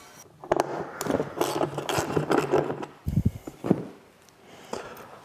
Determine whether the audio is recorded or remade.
recorded